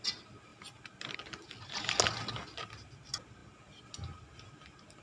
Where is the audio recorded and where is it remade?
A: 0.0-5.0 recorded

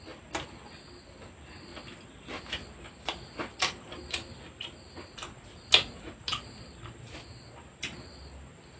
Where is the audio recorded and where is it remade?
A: 0.0-8.8 recorded

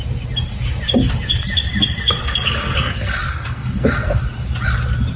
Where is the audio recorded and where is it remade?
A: 0.0-2.2 recorded; 2.2-4.2 remade; 4.2-5.2 recorded

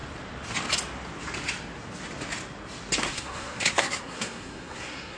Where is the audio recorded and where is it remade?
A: 0.0-3.1 recorded; 3.1-5.2 remade

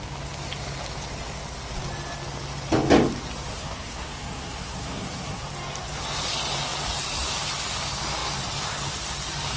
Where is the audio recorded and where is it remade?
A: 0.0-3.5 recorded; 3.5-5.4 remade; 5.4-9.6 recorded

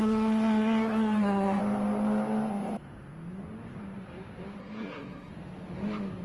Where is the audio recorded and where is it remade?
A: 0.0-1.6 remade; 1.6-4.6 recorded; 4.6-5.3 remade; 5.3-6.2 recorded

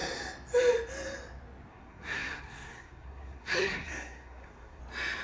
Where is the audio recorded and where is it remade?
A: 0.0-1.7 recorded; 1.7-4.8 remade; 4.8-5.2 recorded

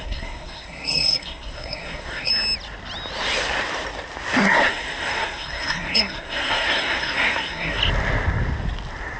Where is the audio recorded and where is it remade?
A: 0.0-2.3 remade; 2.3-4.7 recorded; 4.7-7.8 remade; 7.8-9.2 recorded